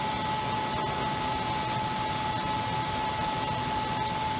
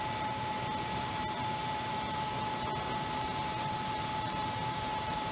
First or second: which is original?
first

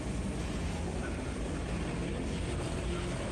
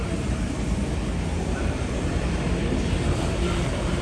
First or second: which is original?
first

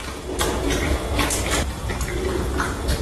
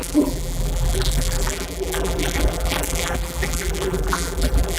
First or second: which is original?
first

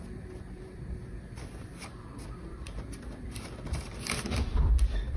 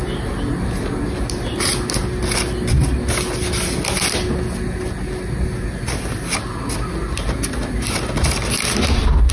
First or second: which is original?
second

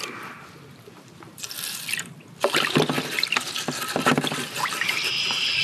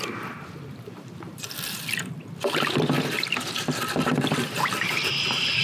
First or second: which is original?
first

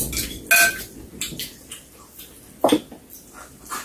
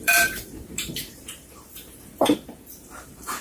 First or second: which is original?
first